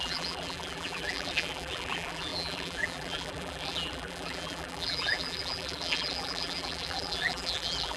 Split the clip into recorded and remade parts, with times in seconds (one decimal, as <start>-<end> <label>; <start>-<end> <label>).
0.0-8.0 remade